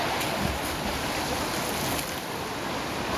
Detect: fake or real real